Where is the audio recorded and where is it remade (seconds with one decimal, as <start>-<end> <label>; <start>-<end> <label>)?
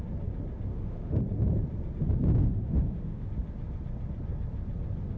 0.0-0.7 recorded; 0.7-1.2 remade; 1.2-2.4 recorded; 2.4-3.3 remade; 3.3-5.2 recorded